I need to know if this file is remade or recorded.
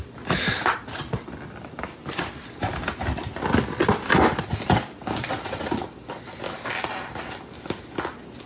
recorded